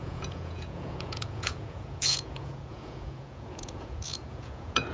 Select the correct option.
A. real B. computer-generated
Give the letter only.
B